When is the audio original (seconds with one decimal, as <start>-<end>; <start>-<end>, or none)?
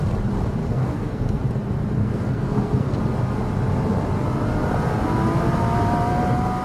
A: 0.0-0.6; 1.4-2.0; 3.0-6.6